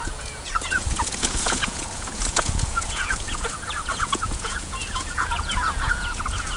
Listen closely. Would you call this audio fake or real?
fake